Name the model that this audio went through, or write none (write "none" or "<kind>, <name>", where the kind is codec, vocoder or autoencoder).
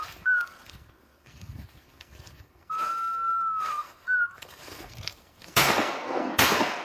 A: codec, SNAC